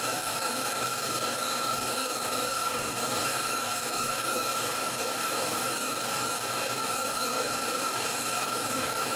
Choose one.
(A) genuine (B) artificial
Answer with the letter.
B